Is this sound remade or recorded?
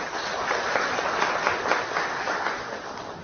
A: recorded